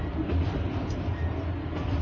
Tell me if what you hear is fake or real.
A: real